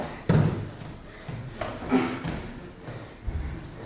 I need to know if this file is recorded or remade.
recorded